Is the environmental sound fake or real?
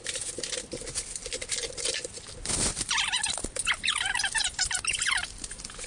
real